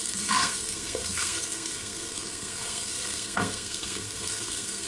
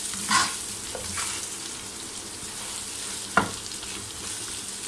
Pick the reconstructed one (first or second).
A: first